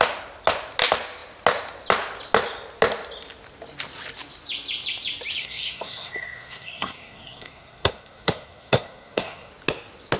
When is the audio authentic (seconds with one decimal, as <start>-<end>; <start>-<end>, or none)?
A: 0.0-5.4; 9.5-10.2